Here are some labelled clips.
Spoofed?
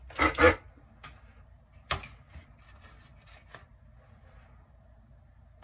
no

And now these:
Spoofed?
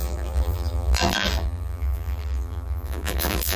yes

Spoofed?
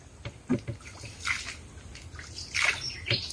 no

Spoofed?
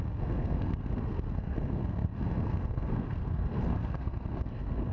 yes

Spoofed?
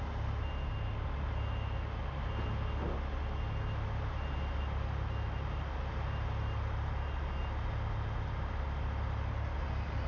no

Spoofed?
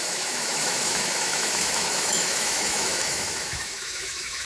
yes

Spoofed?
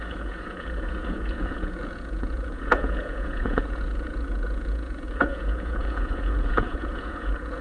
yes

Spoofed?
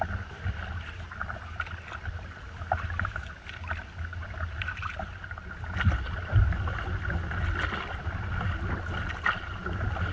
no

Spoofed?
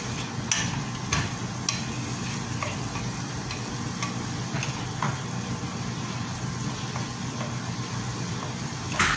no